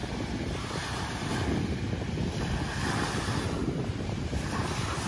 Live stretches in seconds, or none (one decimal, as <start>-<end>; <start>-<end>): 1.3-3.6